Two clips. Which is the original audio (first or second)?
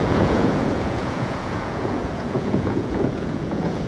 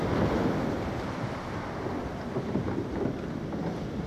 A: second